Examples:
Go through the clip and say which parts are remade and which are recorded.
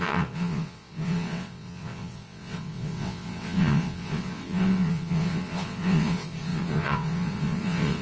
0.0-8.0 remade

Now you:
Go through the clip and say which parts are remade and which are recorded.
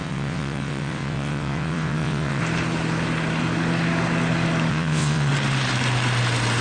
0.0-2.4 remade; 2.4-4.7 recorded; 4.7-5.3 remade; 5.3-6.6 recorded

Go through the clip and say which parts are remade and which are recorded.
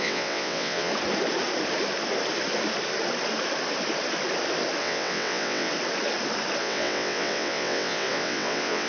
0.0-0.9 remade; 0.9-4.8 recorded; 4.8-5.7 remade; 5.7-6.6 recorded; 6.6-8.9 remade